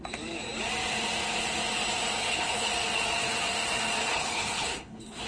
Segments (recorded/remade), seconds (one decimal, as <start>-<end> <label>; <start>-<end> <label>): 0.0-2.2 recorded; 2.2-2.7 remade; 2.7-4.0 recorded; 4.0-5.3 remade